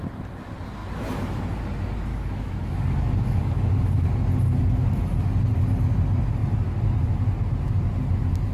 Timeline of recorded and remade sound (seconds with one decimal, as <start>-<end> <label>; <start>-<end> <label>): 0.0-2.1 recorded; 2.1-4.1 remade; 4.1-8.5 recorded